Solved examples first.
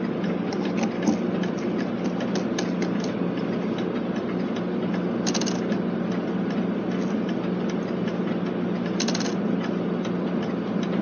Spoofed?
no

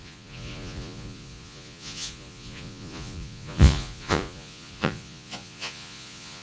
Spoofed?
yes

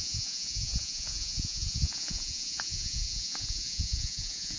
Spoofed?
yes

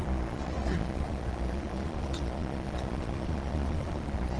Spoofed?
yes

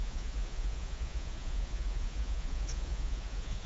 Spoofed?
yes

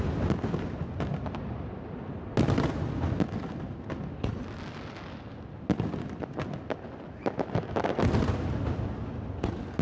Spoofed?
no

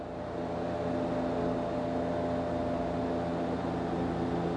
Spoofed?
no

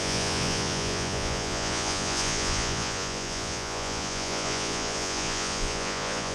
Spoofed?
yes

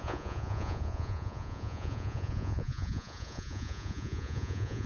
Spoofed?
yes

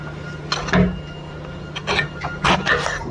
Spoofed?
no